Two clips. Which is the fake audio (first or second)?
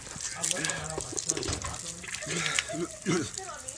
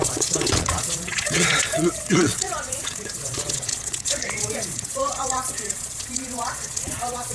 second